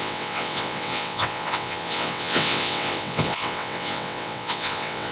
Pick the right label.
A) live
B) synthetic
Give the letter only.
B